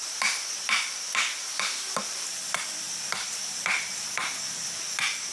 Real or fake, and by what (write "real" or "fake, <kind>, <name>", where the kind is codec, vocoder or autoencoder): real